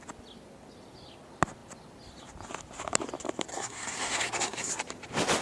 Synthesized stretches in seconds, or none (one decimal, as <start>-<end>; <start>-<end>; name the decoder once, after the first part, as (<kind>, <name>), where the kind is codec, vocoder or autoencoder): 3.5-4.7 (codec, SNAC)